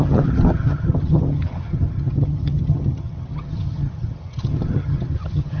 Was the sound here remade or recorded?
remade